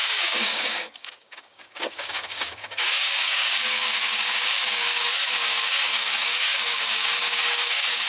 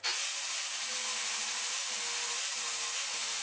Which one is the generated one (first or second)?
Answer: first